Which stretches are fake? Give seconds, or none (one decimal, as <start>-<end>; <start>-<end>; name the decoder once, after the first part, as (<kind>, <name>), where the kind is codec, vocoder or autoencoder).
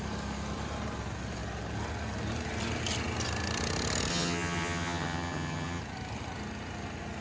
4.1-5.8 (vocoder, HiFi-GAN)